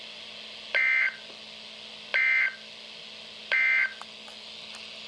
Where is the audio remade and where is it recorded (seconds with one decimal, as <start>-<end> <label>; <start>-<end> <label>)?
0.0-5.1 recorded